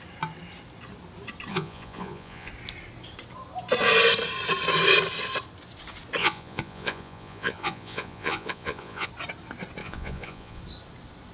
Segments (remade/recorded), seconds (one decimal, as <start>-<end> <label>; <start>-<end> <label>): 0.0-1.5 recorded; 1.5-2.5 remade; 2.5-6.2 recorded; 6.2-9.1 remade; 9.1-9.8 recorded; 9.8-10.6 remade; 10.6-11.3 recorded